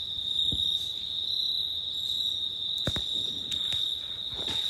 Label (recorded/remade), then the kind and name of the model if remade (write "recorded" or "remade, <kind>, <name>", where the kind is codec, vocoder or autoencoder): recorded